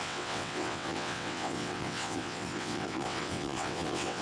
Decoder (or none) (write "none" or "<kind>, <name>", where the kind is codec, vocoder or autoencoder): vocoder, WaveNeXt